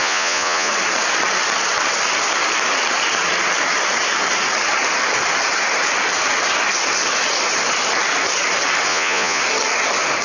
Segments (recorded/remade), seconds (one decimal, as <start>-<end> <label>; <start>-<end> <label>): 0.0-0.7 remade; 0.7-8.9 recorded; 8.9-9.4 remade; 9.4-10.2 recorded